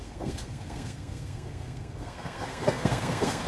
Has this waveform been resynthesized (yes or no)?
yes